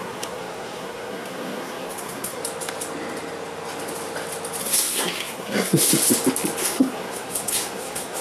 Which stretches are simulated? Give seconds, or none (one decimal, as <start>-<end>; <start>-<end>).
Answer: 0.0-2.4; 4.6-5.9; 6.6-8.2